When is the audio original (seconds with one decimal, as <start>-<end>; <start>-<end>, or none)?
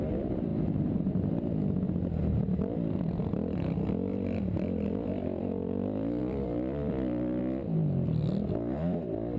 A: 0.0-0.5; 1.5-2.2; 3.0-6.2; 7.4-9.4